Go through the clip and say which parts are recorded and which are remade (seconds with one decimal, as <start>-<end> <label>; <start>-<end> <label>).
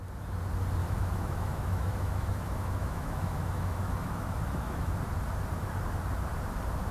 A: 0.0-0.8 recorded; 0.8-4.9 remade; 4.9-6.9 recorded